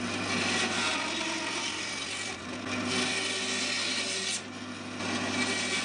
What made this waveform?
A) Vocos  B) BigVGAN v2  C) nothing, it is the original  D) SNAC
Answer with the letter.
C